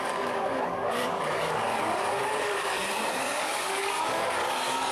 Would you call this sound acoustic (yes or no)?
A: no